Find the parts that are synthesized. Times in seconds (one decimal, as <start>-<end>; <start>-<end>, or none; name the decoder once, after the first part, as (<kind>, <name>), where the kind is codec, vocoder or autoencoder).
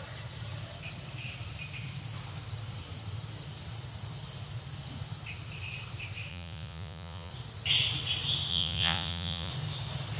6.3-7.3 (vocoder, Vocos); 8.5-9.5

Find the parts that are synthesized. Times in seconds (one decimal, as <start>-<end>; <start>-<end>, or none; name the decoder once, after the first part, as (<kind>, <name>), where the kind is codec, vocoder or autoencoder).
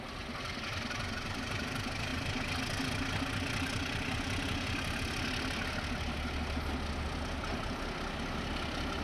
none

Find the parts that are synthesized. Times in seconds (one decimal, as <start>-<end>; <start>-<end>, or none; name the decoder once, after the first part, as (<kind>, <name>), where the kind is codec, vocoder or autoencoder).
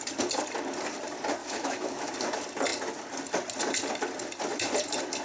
1.4-2.1 (autoencoder, DAC-VAE)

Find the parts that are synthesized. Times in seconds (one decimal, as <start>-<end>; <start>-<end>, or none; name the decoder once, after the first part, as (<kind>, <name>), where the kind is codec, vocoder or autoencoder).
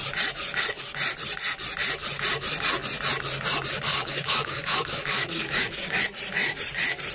3.9-6.0 (codec, DAC)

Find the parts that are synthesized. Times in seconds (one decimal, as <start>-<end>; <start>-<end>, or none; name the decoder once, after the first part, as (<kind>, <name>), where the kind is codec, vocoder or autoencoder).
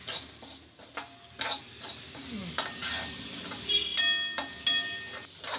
2.4-3.4 (vocoder, BigVGAN v2)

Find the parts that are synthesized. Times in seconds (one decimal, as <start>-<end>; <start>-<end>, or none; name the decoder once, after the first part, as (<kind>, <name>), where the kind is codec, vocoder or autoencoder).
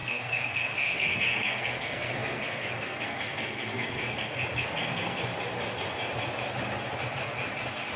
0.0-5.3 (codec, SNAC)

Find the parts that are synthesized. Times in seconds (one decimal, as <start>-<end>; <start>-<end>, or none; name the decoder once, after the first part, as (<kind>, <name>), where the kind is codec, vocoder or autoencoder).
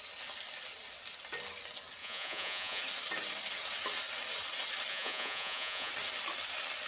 2.0-2.8 (vocoder, Vocos); 4.9-5.9